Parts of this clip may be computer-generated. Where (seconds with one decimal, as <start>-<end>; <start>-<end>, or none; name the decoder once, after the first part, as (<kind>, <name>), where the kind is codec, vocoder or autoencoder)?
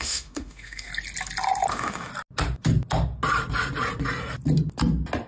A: 0.0-0.9 (autoencoder, DAC-VAE); 1.7-2.1